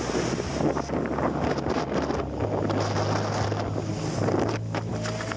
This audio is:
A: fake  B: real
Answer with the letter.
B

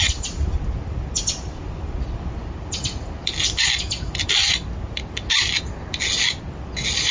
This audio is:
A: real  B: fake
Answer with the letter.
A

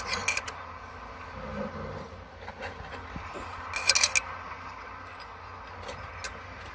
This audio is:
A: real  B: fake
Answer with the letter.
A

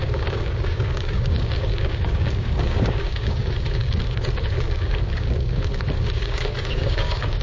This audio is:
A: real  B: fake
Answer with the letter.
B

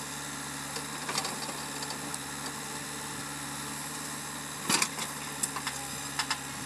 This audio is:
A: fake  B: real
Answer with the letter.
B